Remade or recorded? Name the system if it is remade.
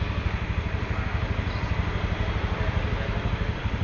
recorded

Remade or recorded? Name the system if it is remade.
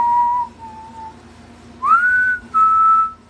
recorded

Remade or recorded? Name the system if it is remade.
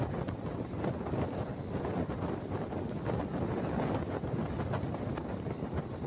recorded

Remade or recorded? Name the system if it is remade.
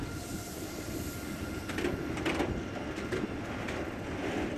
recorded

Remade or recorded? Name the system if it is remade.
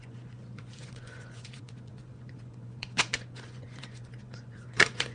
remade, vocoder, Vocos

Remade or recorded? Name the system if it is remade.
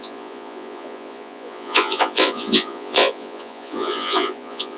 remade, vocoder, Vocos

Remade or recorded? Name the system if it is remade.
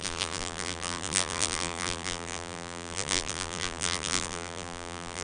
remade, vocoder, BigVGAN v2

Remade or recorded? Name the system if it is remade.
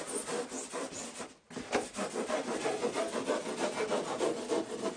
recorded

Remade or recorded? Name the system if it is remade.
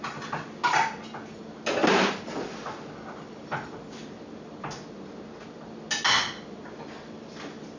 recorded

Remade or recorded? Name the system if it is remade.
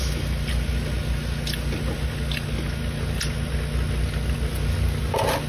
recorded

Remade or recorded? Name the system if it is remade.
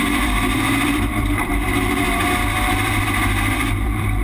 remade, vocoder, BigVGAN v2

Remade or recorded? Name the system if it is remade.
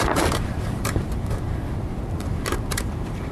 remade, vocoder, BigVGAN v2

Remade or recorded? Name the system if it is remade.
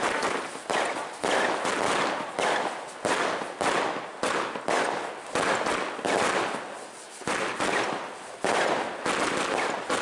recorded